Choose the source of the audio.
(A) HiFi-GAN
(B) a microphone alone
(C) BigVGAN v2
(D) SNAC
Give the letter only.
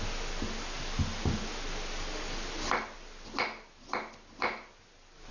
B